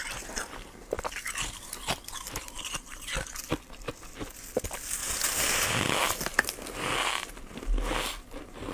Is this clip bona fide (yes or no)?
yes